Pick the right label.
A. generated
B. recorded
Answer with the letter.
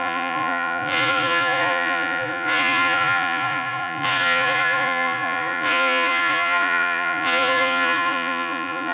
A